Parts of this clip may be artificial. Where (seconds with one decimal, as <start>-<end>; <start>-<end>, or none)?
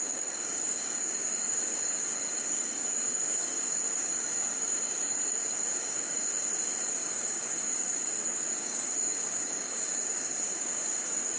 0.0-6.3; 6.9-11.4